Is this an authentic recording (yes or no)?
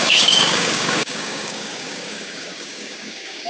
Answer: no